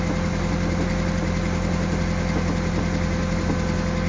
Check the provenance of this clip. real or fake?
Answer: real